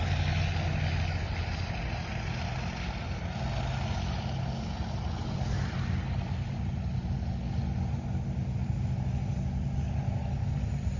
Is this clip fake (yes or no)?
no